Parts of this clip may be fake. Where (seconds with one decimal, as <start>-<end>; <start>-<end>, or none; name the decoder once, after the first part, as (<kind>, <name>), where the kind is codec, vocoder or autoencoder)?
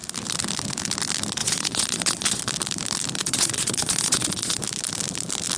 1.4-2.4 (vocoder, Vocos); 3.2-4.6